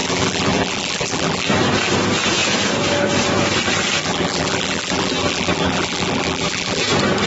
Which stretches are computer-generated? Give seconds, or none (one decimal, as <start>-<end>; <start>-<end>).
0.0-1.5; 4.0-6.8